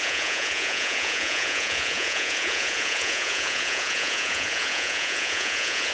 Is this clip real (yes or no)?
no